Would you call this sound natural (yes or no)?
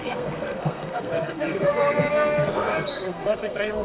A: no